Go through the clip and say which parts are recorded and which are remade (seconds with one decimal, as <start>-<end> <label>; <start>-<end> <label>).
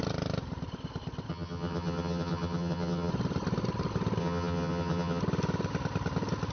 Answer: 0.0-1.3 recorded; 1.3-3.1 remade; 3.1-4.2 recorded; 4.2-5.2 remade; 5.2-6.5 recorded